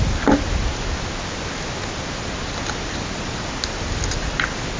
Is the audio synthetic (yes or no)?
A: no